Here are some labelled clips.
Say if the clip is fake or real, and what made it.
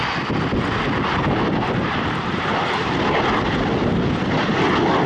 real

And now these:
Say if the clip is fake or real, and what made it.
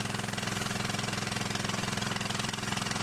fake, vocoder, BigVGAN v2